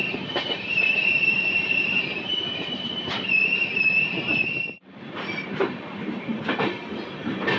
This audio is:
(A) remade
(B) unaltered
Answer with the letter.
A